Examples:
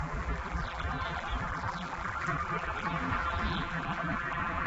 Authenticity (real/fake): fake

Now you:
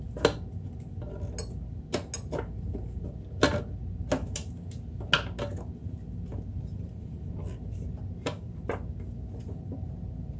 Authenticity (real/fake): real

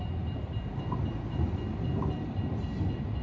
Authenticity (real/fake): real